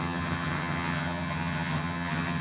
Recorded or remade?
remade